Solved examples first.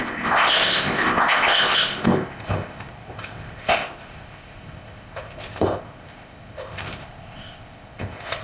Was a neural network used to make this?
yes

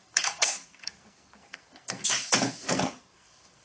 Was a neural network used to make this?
yes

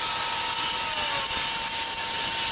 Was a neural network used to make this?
no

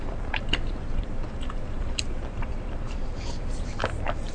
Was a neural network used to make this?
yes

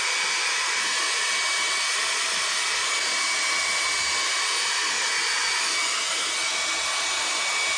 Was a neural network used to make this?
no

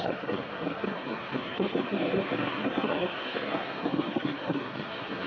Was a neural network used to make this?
yes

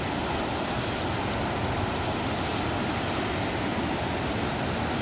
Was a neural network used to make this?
no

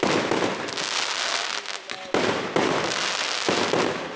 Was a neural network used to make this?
no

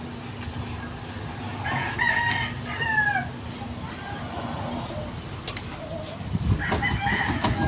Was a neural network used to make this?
no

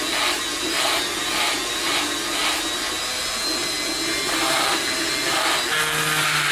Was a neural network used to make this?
no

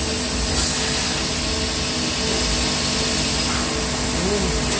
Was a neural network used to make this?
no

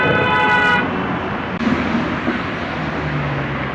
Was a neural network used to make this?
no